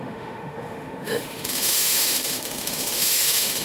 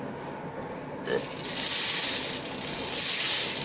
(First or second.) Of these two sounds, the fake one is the first